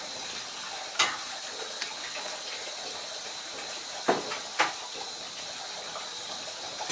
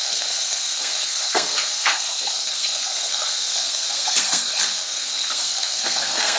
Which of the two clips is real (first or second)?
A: first